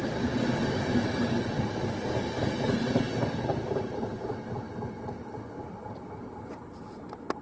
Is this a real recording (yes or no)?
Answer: yes